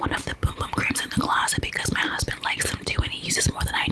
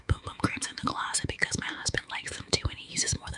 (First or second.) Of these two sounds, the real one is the first